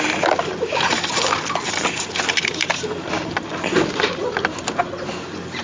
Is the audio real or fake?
real